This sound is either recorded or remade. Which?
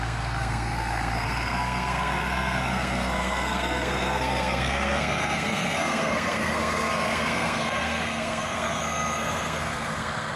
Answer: remade